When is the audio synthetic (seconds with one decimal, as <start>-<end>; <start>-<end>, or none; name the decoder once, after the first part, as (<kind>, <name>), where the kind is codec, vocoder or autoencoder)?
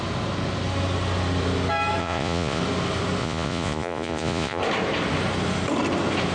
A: 2.0-2.6 (vocoder, Vocos); 3.2-4.6